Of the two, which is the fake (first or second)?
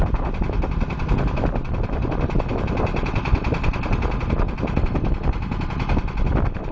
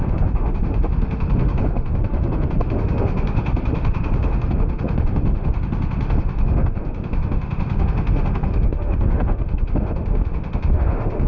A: second